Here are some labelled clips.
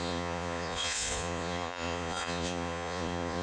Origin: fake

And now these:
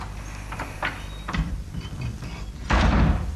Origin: fake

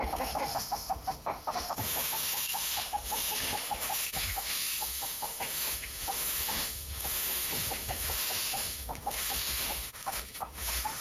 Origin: fake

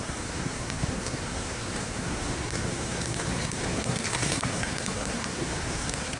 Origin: fake